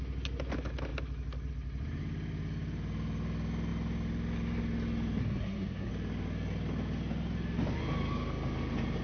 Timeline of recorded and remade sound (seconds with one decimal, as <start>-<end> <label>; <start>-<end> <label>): 0.0-5.2 recorded; 5.2-5.9 remade; 5.9-9.0 recorded